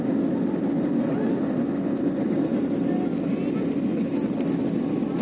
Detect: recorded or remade recorded